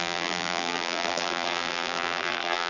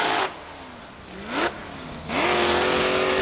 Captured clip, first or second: second